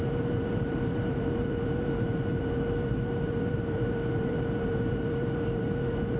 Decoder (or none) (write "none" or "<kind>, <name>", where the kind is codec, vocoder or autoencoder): vocoder, BigVGAN v2